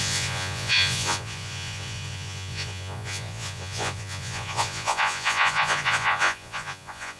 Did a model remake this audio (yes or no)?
yes